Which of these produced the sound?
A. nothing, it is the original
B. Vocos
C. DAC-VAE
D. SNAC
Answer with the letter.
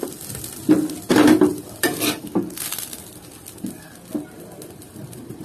A